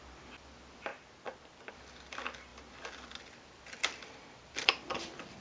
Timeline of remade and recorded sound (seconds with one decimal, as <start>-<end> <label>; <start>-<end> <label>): 0.0-0.9 remade; 0.9-1.7 recorded; 1.7-2.5 remade; 2.5-3.2 recorded; 3.2-5.4 remade